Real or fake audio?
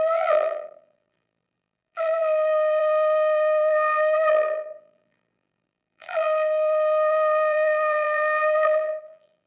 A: fake